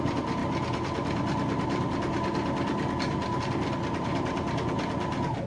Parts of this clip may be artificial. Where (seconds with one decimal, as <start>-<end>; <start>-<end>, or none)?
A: none

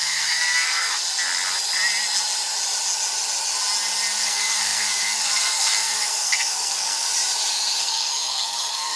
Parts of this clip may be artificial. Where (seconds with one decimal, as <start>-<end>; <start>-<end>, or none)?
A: 0.0-1.0; 4.2-7.1; 7.8-9.0

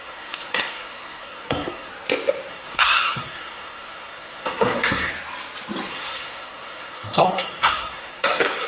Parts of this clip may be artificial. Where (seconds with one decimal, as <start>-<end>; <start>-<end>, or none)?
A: 0.0-1.9; 2.5-5.1; 5.9-8.7

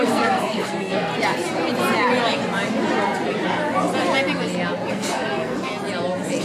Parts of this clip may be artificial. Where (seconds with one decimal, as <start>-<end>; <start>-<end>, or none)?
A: 0.0-1.1; 4.9-5.7

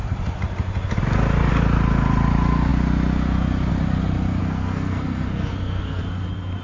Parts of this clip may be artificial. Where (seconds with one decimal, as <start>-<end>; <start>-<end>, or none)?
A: 4.4-6.0

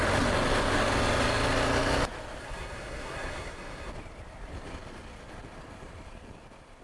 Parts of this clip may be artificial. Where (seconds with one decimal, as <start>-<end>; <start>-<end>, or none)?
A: 2.4-3.9

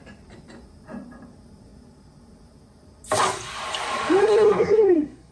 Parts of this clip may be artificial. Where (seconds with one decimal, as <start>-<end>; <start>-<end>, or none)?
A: 4.2-5.3

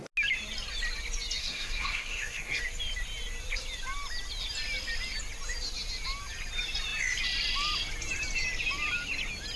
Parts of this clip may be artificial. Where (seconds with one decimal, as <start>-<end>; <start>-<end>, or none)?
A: 1.4-2.6